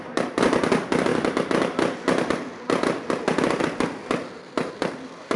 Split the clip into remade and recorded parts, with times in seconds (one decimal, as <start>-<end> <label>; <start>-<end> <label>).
0.0-5.4 recorded